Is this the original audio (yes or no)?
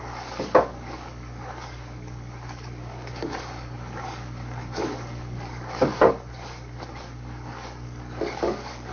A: no